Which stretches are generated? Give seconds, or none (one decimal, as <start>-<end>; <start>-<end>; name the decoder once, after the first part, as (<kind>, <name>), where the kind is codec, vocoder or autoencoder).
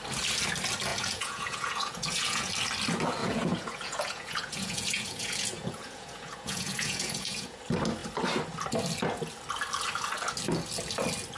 0.9-2.5 (vocoder, Vocos); 3.2-7.6